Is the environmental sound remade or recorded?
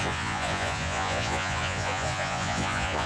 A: remade